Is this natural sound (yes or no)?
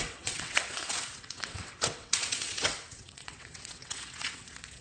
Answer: no